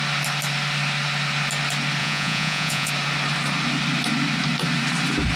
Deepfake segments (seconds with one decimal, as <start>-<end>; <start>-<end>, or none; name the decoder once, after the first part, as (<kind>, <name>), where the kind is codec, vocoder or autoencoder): 2.0-2.9 (vocoder, Vocos)